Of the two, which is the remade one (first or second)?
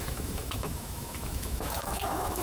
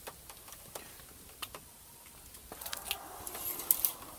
first